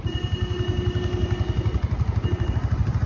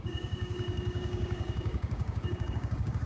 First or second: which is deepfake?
second